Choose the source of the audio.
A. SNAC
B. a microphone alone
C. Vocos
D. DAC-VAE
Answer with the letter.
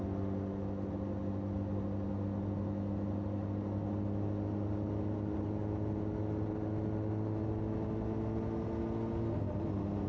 B